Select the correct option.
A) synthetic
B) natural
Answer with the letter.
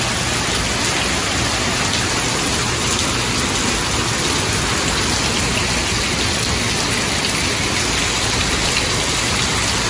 B